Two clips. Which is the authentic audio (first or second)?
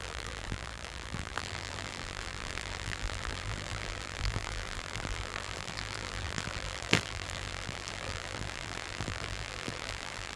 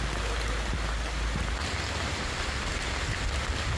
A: second